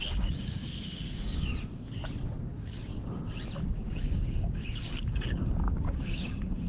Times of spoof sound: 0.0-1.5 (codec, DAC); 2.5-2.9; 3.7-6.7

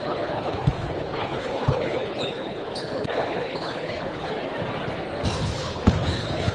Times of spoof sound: 0.0-4.3 (codec, HILCodec); 5.3-6.5

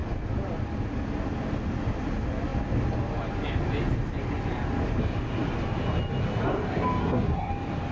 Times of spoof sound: 7.0-7.5 (codec, SNAC)

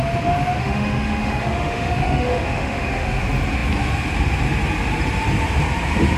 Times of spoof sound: 0.6-3.2 (autoencoder, DAC-VAE)

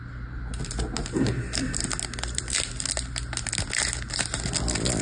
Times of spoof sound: none

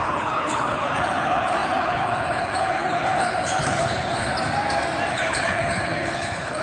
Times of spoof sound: 0.0-4.3 (codec, HILCodec); 5.1-6.6

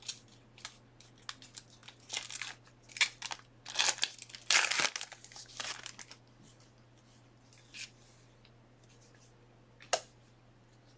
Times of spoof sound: none